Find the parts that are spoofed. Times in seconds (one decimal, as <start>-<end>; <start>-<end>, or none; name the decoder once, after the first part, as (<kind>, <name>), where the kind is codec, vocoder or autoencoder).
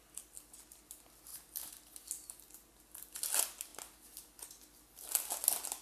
none